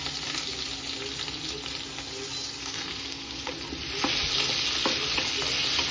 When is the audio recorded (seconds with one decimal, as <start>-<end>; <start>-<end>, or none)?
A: 0.0-2.6; 3.5-5.9

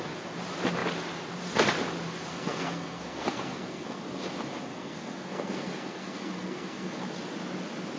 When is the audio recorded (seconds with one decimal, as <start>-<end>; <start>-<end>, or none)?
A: 0.0-2.3; 4.0-4.7; 7.0-8.0

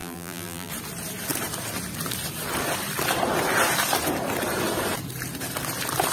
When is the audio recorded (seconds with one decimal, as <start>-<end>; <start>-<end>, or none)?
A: 0.7-6.1

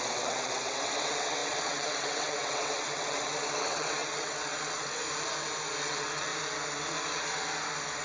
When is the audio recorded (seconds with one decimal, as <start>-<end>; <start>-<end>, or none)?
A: 5.0-5.8; 6.3-8.0

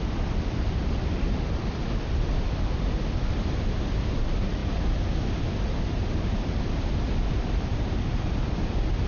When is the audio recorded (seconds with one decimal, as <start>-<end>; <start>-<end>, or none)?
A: 4.6-5.6